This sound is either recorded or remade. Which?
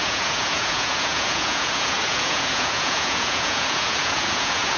remade